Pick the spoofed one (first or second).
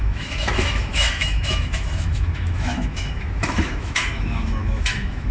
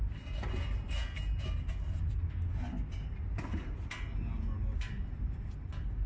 first